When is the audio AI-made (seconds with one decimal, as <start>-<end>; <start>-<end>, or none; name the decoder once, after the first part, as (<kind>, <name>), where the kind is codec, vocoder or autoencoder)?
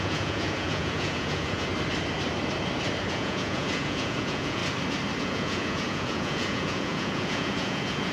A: 0.0-1.7 (vocoder, Vocos); 3.1-4.6; 5.2-8.1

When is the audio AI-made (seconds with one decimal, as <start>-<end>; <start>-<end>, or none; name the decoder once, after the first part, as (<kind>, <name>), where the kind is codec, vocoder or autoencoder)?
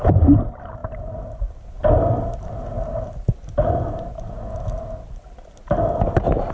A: none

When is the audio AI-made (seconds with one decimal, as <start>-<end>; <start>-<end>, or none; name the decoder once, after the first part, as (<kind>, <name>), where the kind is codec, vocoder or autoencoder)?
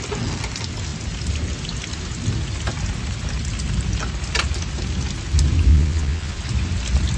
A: 5.7-6.4 (vocoder, Vocos)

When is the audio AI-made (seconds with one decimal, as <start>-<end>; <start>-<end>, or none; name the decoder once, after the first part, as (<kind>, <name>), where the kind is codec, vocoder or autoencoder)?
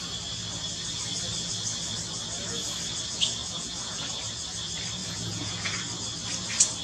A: 3.4-4.1 (vocoder, Vocos); 5.0-5.7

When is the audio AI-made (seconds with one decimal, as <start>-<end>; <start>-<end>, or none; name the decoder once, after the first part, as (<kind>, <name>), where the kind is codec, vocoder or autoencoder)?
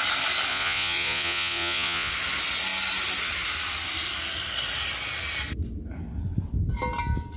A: 0.5-2.1 (vocoder, Vocos)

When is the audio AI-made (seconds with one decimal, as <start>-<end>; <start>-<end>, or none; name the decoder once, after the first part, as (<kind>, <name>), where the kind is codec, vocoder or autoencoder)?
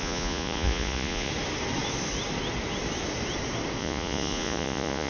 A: 0.0-1.3 (vocoder, Vocos); 3.8-5.1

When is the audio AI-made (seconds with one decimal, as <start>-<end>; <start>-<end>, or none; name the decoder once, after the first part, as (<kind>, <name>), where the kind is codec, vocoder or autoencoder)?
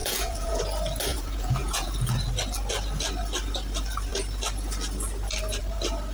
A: 0.0-0.6 (vocoder, Vocos); 1.1-1.9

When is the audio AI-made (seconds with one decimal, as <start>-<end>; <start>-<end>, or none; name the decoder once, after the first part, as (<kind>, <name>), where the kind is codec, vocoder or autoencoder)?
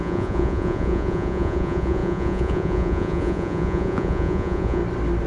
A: 0.0-4.8 (vocoder, Vocos)